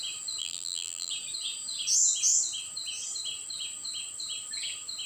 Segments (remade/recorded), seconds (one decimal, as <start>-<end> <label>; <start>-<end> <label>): 0.0-0.4 recorded; 0.4-1.1 remade; 1.1-5.1 recorded